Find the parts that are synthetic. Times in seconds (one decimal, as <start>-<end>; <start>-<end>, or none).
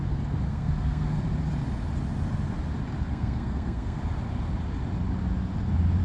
0.5-1.2; 3.1-4.0